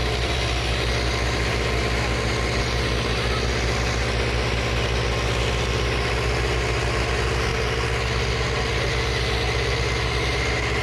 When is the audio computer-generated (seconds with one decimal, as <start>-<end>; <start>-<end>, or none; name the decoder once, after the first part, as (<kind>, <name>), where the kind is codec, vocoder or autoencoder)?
0.0-2.6 (vocoder, BigVGAN v2)